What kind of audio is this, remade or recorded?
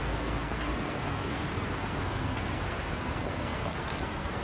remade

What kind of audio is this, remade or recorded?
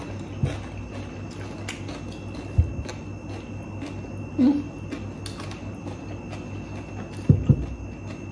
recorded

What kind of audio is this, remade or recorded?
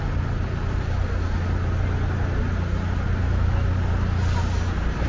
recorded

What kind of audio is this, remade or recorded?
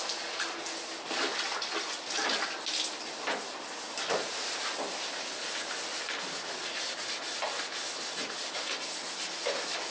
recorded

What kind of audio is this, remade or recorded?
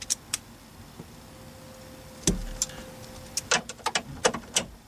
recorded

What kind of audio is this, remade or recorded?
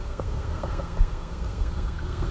remade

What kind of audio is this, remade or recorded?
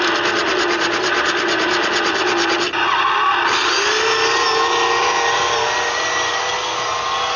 recorded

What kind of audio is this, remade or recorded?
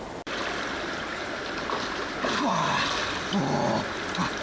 recorded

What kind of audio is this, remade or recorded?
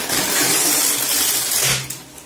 recorded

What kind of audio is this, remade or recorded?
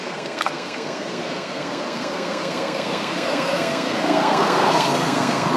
remade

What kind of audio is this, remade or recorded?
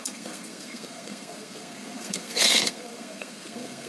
remade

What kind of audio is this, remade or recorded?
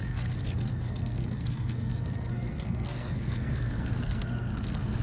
remade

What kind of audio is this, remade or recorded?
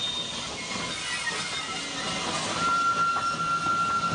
recorded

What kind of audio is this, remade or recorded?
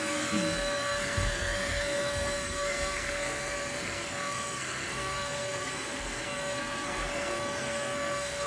remade